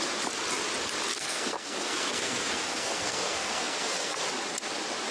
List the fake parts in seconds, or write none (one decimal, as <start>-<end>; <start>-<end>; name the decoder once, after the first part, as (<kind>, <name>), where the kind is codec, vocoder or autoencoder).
1.1-4.2 (codec, SNAC)